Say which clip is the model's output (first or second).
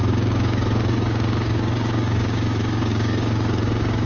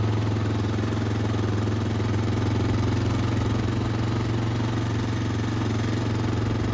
first